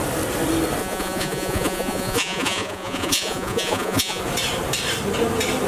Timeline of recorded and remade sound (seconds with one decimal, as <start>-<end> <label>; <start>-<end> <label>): 0.0-0.8 recorded; 0.8-4.2 remade; 4.2-5.7 recorded